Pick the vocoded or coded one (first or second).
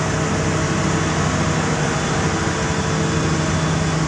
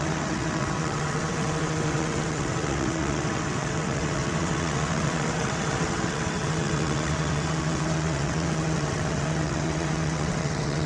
second